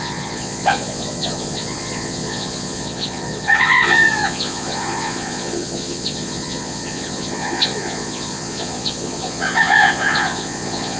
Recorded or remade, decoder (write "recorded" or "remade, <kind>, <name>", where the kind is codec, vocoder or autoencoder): remade, vocoder, Vocos